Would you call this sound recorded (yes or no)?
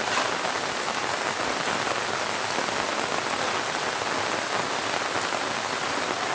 yes